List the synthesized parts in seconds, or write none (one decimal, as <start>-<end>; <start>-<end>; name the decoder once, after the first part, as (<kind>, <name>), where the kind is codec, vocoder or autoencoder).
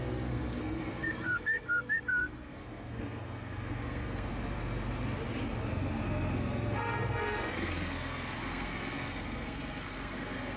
0.0-4.3 (codec, SNAC); 5.7-10.6